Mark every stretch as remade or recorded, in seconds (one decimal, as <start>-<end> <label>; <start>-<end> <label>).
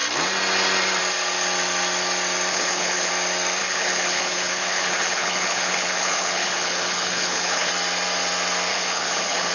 0.0-2.5 recorded; 2.5-3.1 remade; 3.1-3.6 recorded; 3.6-7.7 remade; 7.7-8.7 recorded; 8.7-9.5 remade